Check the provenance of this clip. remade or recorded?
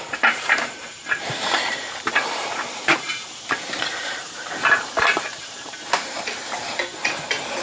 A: remade